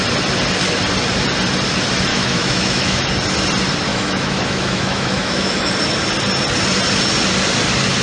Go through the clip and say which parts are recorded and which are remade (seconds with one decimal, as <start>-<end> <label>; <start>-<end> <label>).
0.0-2.1 recorded; 2.1-3.1 remade; 3.1-3.9 recorded; 3.9-5.7 remade; 5.7-8.0 recorded